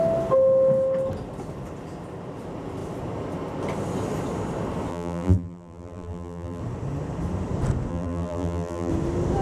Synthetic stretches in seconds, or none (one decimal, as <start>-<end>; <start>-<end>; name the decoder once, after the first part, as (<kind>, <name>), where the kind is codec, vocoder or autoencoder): 4.9-6.6 (vocoder, BigVGAN v2); 7.9-8.9